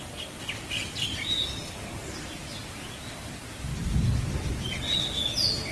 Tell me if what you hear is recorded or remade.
recorded